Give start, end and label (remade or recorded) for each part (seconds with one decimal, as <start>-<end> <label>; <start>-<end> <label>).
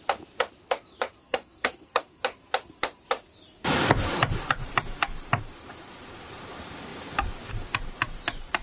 0.0-1.2 recorded; 1.2-2.2 remade; 2.2-8.6 recorded